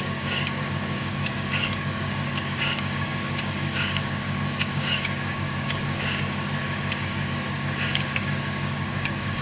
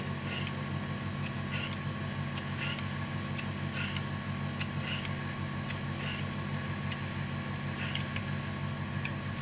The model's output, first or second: first